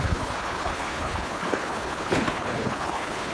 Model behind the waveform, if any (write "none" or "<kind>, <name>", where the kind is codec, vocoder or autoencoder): codec, HILCodec